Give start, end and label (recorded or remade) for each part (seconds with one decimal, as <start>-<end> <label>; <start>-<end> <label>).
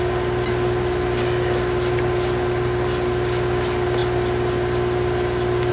0.0-5.7 recorded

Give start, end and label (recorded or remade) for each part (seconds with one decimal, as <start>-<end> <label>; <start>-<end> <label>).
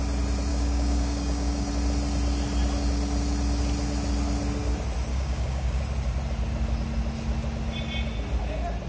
0.0-0.5 recorded; 0.5-1.7 remade; 1.7-5.1 recorded; 5.1-5.8 remade; 5.8-8.9 recorded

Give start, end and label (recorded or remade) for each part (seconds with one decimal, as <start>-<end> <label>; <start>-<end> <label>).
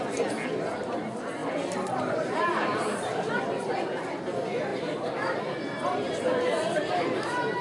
0.0-1.4 recorded; 1.4-4.1 remade; 4.1-4.7 recorded; 4.7-6.9 remade; 6.9-7.6 recorded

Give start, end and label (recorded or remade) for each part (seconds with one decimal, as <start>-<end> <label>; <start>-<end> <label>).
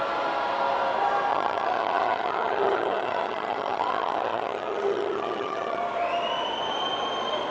0.0-1.3 recorded; 1.3-5.8 remade; 5.8-7.5 recorded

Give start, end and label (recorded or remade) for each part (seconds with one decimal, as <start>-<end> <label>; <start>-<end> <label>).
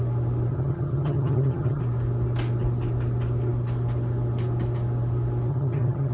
0.0-0.5 recorded; 0.5-1.8 remade; 1.8-5.5 recorded; 5.5-6.1 remade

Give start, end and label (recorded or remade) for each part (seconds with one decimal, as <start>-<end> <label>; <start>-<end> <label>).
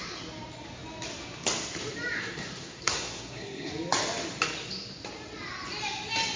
0.0-2.2 recorded; 2.2-3.7 remade; 3.7-6.4 recorded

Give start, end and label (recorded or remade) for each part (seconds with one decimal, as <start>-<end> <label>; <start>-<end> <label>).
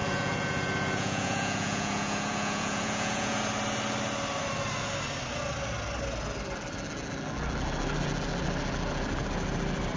0.0-3.4 remade; 3.4-10.0 recorded